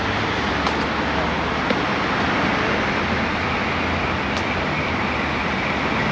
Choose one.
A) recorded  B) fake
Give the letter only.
A